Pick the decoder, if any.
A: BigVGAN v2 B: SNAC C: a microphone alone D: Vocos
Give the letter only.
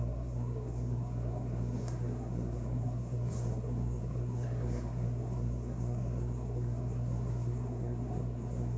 B